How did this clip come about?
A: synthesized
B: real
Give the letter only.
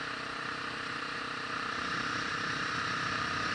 A